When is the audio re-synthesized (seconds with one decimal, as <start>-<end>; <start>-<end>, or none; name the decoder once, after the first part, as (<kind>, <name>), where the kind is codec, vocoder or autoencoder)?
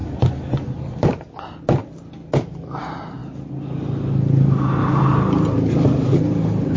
none